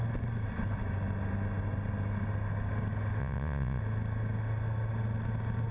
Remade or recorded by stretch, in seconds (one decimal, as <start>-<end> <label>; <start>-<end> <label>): 0.0-3.2 recorded; 3.2-3.8 remade; 3.8-5.7 recorded